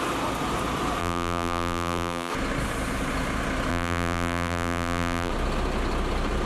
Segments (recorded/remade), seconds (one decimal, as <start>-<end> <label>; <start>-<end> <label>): 0.0-1.0 recorded; 1.0-2.3 remade; 2.3-3.7 recorded; 3.7-5.3 remade; 5.3-6.5 recorded